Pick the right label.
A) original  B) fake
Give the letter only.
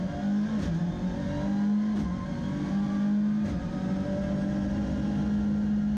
A